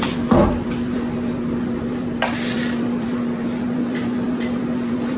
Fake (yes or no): yes